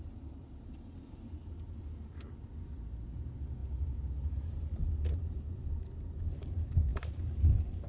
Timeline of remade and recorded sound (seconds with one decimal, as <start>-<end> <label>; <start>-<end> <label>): 0.0-7.9 recorded